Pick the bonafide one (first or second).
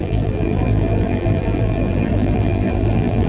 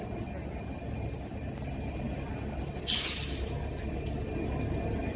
second